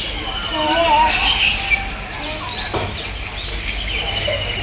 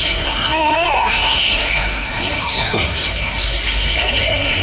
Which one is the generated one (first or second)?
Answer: second